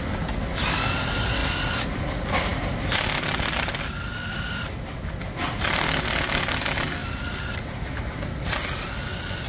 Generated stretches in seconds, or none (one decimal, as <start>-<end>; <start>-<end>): 7.0-8.2